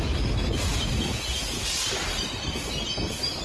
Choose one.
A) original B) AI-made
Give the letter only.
A